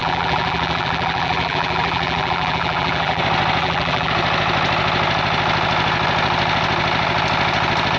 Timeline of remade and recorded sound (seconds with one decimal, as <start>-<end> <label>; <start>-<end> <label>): 0.0-3.2 remade; 3.2-3.6 recorded; 3.6-4.1 remade; 4.1-8.0 recorded

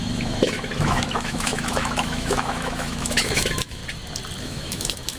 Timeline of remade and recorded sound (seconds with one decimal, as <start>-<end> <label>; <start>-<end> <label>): 0.0-3.8 remade; 3.8-4.4 recorded; 4.4-5.2 remade